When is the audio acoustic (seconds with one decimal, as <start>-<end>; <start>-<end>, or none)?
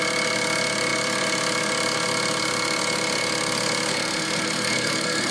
0.0-3.9